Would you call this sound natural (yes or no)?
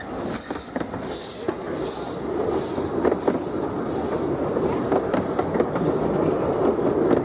yes